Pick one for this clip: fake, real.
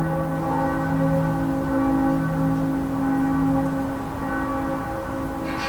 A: real